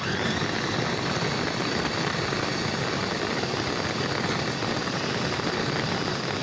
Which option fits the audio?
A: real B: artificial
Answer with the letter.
A